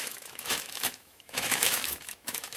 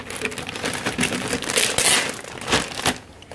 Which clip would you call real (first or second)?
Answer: second